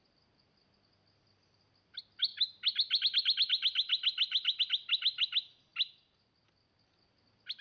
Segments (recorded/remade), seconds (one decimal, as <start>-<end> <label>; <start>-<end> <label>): 0.0-7.6 recorded